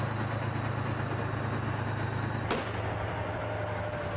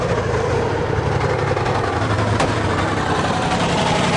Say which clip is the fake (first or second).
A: second